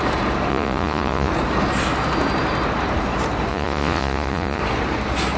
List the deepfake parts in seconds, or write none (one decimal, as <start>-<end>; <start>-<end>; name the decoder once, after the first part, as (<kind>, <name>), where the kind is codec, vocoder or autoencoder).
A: 0.5-1.3 (vocoder, Vocos); 3.5-4.6